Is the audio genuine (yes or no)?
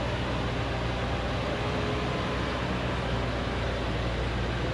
yes